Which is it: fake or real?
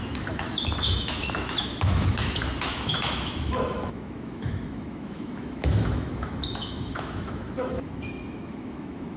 fake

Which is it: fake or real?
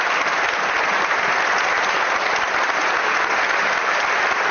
real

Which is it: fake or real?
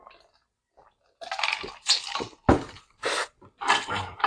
fake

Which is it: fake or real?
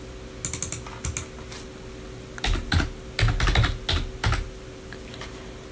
real